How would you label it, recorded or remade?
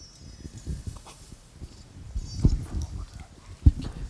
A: recorded